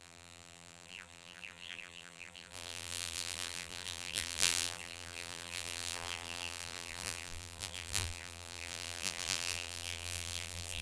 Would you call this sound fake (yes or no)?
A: yes